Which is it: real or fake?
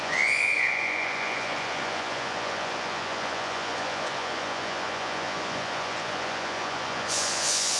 fake